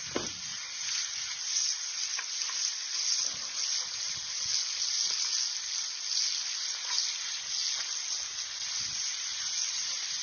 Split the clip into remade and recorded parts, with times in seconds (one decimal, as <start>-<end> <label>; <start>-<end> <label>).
0.0-10.2 recorded